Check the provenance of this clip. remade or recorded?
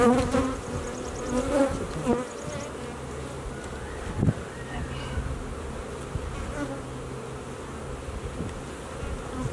recorded